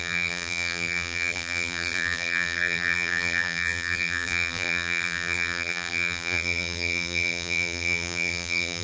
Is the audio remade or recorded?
remade